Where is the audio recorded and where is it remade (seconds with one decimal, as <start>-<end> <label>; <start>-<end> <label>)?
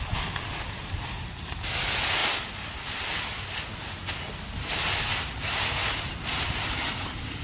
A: 0.0-5.8 recorded; 5.8-7.4 remade